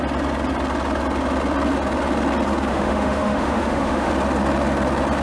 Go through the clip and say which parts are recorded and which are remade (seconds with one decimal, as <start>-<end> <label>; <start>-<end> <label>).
0.0-2.7 recorded; 2.7-4.1 remade; 4.1-5.2 recorded